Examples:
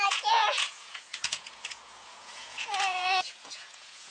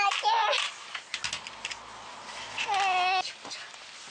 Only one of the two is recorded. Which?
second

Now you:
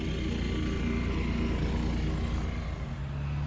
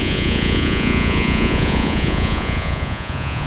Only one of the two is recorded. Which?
first